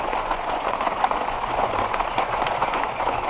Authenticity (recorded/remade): remade